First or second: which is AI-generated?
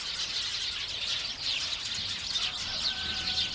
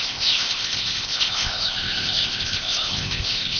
second